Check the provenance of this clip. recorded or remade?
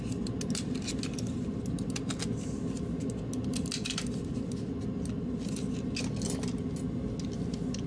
recorded